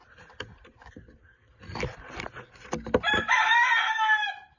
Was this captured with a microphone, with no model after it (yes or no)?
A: yes